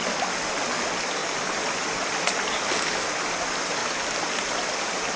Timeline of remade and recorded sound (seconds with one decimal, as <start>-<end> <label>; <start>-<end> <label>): 0.0-5.2 recorded